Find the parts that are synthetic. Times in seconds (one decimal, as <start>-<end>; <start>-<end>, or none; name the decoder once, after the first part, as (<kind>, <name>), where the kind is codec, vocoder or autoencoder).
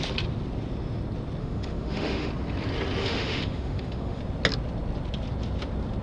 1.4-2.3 (autoencoder, DAC-VAE); 3.0-4.2